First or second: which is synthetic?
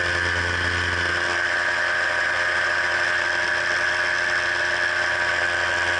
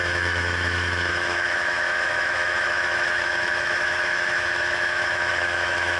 second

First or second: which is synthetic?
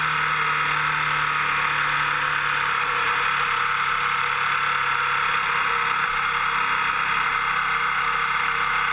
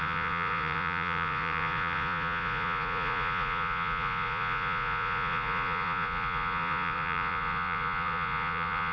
second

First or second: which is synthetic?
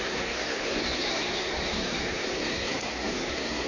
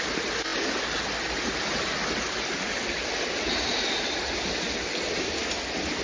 first